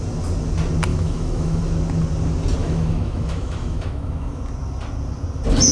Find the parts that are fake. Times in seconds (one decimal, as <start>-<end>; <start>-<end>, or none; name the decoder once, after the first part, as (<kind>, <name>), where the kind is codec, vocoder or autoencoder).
0.9-1.6 (autoencoder, DAC-VAE); 2.6-4.4